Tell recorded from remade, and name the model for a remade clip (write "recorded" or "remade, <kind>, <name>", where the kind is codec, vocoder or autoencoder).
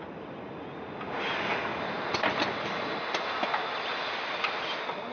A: recorded